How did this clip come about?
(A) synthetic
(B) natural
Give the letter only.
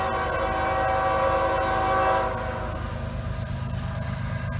B